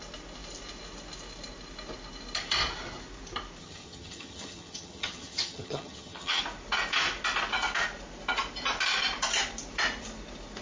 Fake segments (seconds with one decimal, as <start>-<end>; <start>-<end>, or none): 3.6-6.4